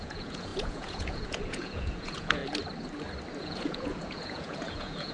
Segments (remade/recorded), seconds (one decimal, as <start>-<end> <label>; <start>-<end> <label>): 0.0-2.4 remade; 2.4-3.4 recorded; 3.4-5.1 remade